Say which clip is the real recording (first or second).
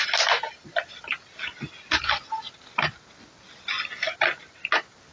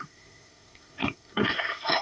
first